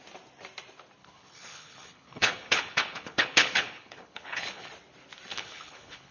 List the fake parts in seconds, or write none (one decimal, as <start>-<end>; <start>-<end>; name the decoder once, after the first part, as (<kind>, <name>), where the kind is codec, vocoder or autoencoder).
1.0-4.7 (codec, HILCodec); 5.3-6.1